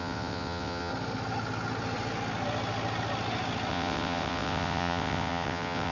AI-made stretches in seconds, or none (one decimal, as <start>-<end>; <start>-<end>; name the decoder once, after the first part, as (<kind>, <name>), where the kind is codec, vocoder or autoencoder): 0.0-0.9 (vocoder, WaveNeXt); 3.7-5.9

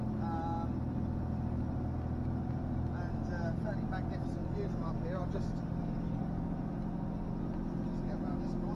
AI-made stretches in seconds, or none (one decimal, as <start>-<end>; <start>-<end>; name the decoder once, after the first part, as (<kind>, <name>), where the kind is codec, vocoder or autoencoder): none